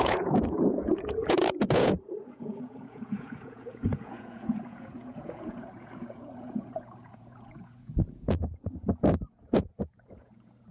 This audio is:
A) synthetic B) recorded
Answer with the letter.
A